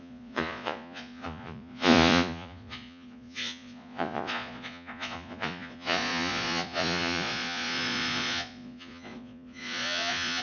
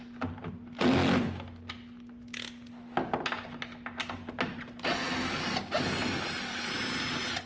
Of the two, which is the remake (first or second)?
first